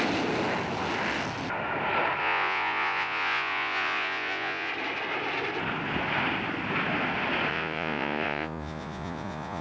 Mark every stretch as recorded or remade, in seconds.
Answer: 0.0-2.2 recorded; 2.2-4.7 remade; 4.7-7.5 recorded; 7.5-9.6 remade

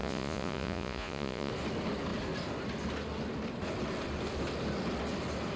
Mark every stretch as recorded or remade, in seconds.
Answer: 0.0-1.5 remade; 1.5-5.6 recorded

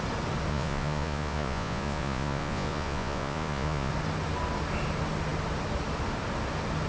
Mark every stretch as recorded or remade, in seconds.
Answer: 0.0-0.5 recorded; 0.5-3.9 remade; 3.9-6.9 recorded